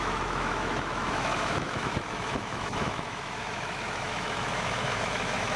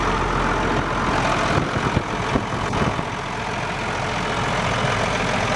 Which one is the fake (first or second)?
first